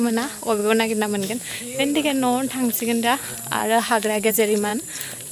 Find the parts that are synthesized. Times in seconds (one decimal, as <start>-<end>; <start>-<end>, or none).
0.6-1.8; 3.6-4.3